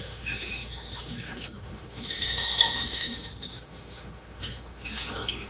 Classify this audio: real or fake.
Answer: fake